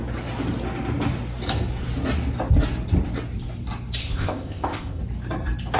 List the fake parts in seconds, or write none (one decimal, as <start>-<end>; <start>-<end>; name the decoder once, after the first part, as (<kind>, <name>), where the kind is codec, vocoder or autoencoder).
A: 4.0-5.0 (codec, ZipCodec)